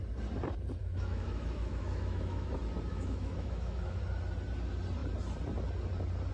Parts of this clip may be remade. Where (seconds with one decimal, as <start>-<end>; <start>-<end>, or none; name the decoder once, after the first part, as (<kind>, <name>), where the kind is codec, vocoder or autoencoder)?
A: 0.8-2.5 (autoencoder, DAC-VAE); 2.9-4.0